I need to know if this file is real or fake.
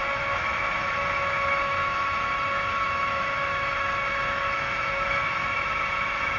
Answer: fake